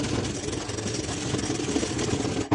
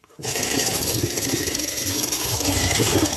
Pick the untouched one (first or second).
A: first